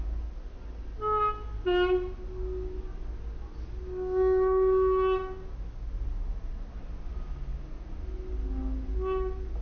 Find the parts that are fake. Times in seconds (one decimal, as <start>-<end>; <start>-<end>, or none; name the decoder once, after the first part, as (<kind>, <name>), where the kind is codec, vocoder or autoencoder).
none